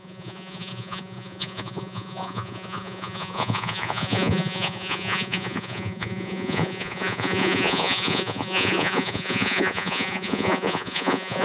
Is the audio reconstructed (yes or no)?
yes